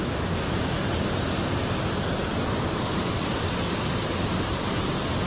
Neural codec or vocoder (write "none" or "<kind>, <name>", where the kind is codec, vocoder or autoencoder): none